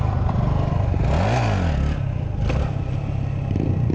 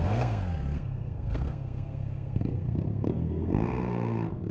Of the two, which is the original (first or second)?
first